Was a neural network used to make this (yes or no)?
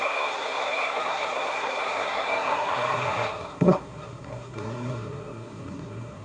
yes